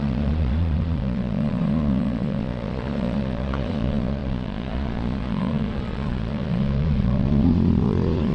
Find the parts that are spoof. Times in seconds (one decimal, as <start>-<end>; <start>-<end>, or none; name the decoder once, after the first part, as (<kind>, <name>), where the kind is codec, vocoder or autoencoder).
0.0-8.3 (vocoder, Vocos)

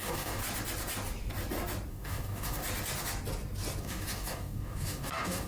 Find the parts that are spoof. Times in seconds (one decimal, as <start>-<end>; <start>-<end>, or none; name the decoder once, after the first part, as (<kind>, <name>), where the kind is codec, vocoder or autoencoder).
0.0-0.4 (codec, DAC); 1.9-2.6; 3.8-5.5

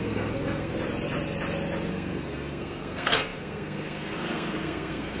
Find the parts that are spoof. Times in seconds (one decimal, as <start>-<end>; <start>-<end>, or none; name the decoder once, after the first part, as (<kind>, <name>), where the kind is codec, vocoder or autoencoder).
0.0-0.7 (codec, SNAC); 1.9-5.2

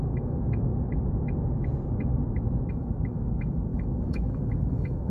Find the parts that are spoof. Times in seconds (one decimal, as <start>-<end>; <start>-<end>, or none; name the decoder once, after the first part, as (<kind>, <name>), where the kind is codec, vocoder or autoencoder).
0.0-0.7 (autoencoder, DAC-VAE); 2.7-5.1

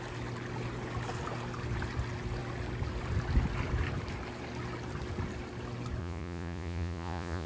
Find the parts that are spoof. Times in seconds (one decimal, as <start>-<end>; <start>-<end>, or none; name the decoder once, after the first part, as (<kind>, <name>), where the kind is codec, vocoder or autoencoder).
6.0-7.5 (vocoder, Vocos)

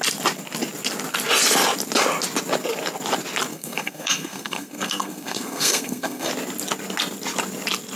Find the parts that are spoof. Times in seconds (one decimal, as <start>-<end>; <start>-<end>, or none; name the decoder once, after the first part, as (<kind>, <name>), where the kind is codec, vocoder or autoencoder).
3.5-6.3 (codec, SNAC)

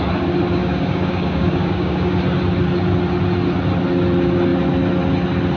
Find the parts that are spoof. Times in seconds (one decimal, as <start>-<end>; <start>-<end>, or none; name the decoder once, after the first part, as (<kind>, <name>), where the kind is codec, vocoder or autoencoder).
0.6-2.2 (codec, DAC)

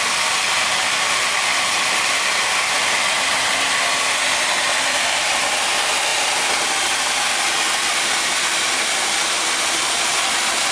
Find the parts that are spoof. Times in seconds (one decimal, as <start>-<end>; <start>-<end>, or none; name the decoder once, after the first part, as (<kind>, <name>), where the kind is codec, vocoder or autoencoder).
6.1-9.3 (vocoder, BigVGAN v2)